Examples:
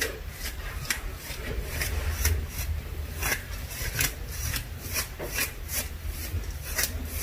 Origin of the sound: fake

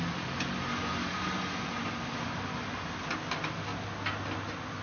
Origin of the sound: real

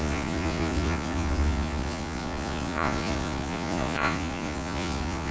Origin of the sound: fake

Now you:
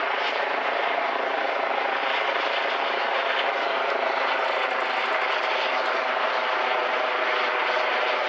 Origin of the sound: real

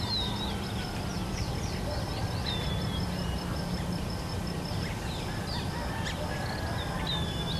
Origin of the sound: real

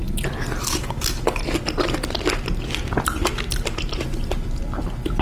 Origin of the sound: real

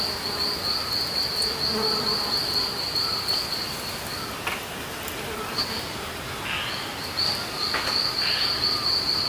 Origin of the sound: real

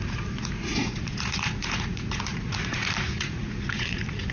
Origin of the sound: fake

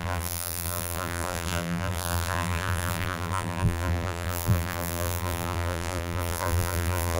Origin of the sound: fake